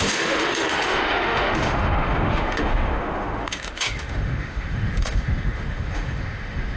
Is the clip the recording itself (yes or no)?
no